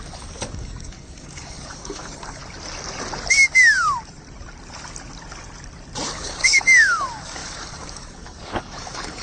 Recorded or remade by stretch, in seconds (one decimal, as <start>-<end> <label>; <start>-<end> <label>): 0.0-2.4 remade; 2.4-6.1 recorded; 6.1-9.2 remade